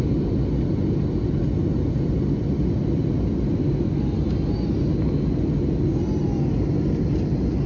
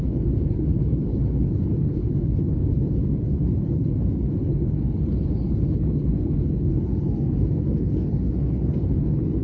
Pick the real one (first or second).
first